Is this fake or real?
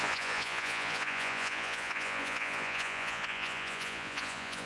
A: fake